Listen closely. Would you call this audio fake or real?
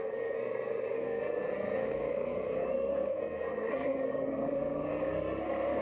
fake